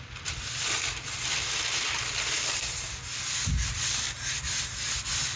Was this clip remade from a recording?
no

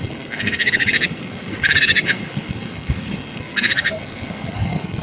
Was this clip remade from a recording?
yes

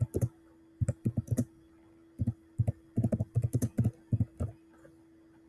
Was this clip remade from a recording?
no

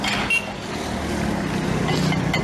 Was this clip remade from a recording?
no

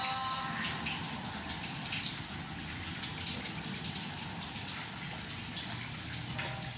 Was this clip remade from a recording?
no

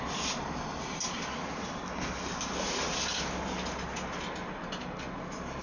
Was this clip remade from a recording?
no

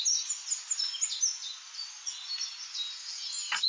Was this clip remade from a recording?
no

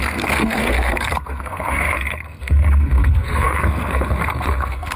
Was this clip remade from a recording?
yes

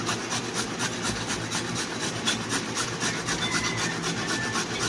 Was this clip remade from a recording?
no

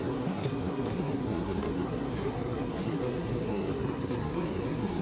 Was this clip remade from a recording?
yes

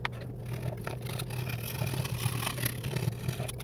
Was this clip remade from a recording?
no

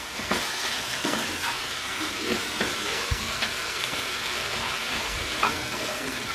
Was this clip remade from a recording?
yes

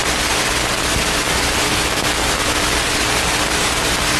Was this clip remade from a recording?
no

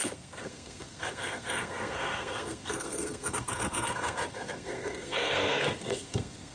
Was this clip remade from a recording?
yes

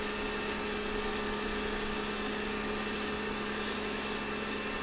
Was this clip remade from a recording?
no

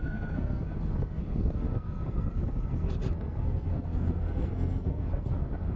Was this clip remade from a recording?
yes